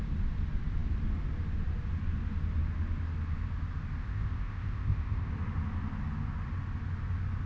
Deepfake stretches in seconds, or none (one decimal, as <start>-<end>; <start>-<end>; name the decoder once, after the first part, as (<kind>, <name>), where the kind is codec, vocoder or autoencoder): 4.0-5.3 (codec, ZipCodec)

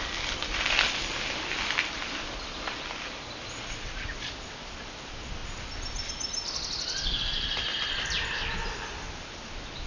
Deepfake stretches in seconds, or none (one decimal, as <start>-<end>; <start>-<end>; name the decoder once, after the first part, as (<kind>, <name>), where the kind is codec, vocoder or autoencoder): none

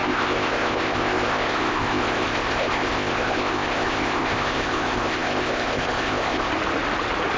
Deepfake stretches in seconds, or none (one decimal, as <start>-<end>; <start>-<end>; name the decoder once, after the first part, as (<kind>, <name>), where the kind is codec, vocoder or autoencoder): 0.0-6.5 (codec, ZipCodec)

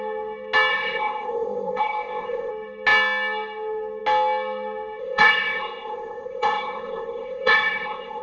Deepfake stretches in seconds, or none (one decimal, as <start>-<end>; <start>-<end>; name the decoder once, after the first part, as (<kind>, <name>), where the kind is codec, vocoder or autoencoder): 0.7-2.5 (codec, ZipCodec); 5.0-8.2

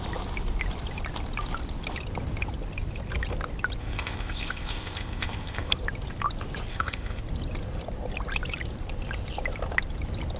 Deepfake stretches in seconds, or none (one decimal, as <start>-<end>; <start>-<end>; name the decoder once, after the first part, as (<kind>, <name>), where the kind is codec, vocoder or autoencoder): 3.8-5.7 (codec, ZipCodec); 6.7-7.2

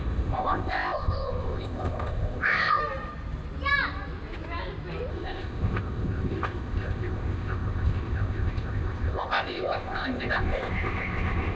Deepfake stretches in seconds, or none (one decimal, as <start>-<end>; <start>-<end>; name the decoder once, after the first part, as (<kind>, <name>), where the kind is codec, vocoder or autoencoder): 0.0-2.8 (codec, ZipCodec); 5.1-11.6

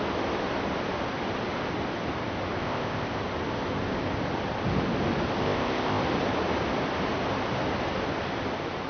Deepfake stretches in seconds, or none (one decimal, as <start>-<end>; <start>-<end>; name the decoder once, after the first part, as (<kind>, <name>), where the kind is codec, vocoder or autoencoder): 2.6-3.2 (codec, ZipCodec); 5.4-6.0